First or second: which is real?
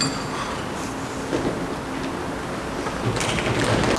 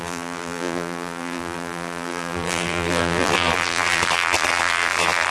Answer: first